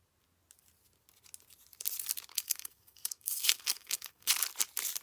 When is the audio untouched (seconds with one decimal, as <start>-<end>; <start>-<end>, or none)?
0.0-2.3; 4.3-5.0